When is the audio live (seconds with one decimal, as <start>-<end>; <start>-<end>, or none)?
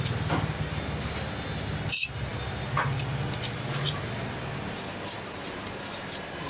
0.0-6.5